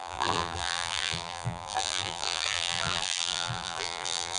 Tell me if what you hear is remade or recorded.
remade